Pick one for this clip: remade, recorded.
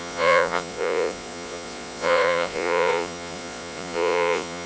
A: remade